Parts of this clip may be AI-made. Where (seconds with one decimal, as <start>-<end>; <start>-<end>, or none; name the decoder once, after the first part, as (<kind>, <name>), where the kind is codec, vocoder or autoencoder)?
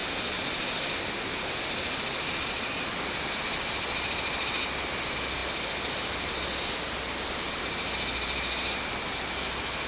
none